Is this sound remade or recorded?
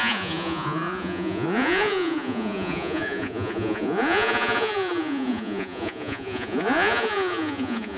remade